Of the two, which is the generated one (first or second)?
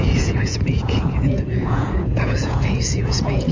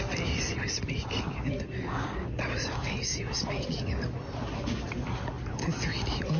first